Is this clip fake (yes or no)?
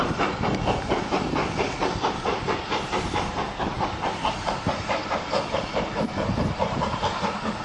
yes